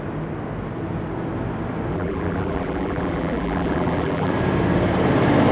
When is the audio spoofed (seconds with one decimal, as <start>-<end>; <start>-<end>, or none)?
1.9-4.3